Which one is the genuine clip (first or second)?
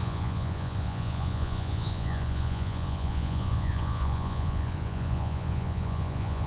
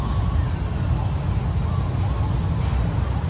second